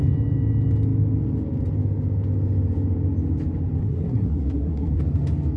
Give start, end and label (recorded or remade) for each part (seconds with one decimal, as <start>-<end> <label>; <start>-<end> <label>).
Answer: 0.0-3.8 recorded; 3.8-5.0 remade; 5.0-5.6 recorded